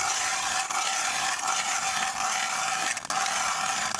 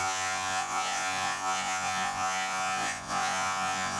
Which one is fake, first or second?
second